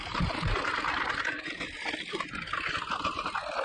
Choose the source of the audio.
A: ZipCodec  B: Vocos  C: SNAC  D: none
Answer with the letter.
D